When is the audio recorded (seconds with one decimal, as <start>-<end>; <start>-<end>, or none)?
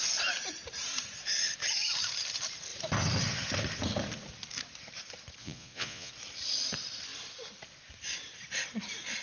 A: 0.0-5.4; 6.1-9.2